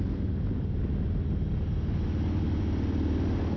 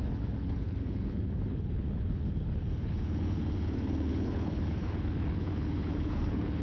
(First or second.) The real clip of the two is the first